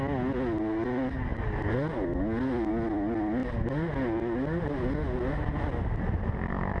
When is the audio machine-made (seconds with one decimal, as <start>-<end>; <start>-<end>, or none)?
none